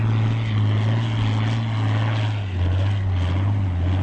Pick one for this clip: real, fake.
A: real